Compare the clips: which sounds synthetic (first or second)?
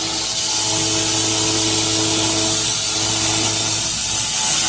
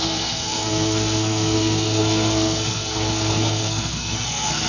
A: second